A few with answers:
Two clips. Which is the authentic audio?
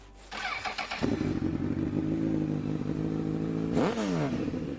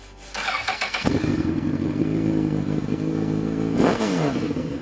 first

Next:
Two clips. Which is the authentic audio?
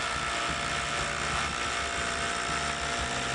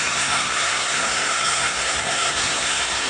first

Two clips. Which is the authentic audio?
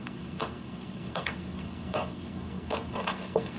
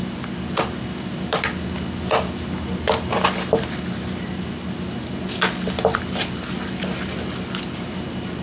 second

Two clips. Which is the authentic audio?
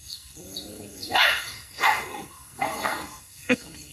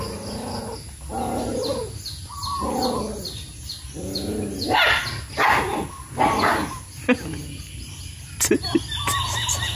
second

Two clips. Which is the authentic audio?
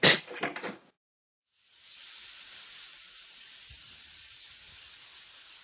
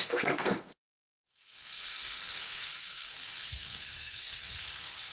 first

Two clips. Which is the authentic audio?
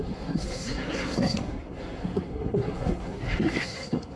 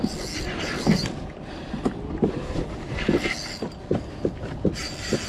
second